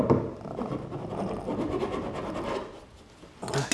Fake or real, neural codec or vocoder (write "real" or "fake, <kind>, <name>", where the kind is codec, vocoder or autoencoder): real